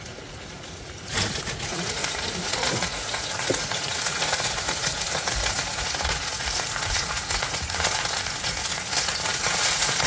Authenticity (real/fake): fake